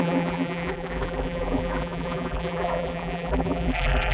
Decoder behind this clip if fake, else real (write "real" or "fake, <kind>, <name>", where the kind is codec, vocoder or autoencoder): fake, vocoder, BigVGAN v2